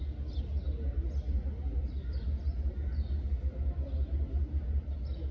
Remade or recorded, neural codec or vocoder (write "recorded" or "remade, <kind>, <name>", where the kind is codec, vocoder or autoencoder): recorded